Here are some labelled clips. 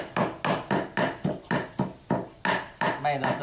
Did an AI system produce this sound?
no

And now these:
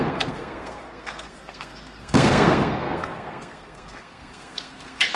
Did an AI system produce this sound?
yes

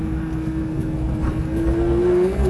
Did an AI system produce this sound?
yes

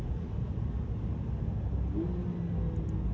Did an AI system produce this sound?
no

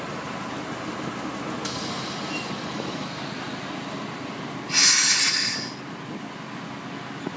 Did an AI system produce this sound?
no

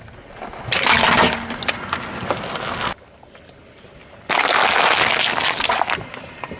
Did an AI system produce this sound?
no